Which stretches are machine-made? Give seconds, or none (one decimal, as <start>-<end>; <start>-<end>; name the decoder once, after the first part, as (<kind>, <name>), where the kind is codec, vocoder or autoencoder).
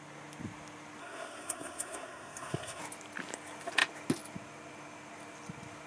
1.0-2.8 (codec, SNAC)